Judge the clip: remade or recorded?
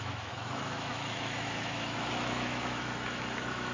remade